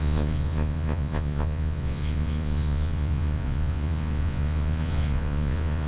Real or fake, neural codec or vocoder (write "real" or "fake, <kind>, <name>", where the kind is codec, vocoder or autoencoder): fake, vocoder, Vocos